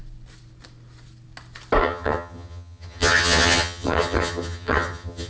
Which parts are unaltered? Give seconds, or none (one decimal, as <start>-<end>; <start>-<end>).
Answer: 0.0-1.8